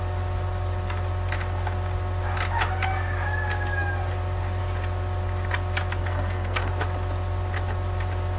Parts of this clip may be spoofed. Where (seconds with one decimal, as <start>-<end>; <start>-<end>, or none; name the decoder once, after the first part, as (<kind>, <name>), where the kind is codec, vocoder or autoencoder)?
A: 6.0-6.7 (codec, SNAC)